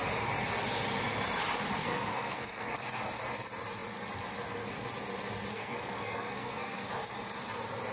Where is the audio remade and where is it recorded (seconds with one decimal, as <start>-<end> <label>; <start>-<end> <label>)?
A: 0.0-1.8 recorded; 1.8-2.7 remade; 2.7-5.5 recorded; 5.5-6.9 remade; 6.9-7.9 recorded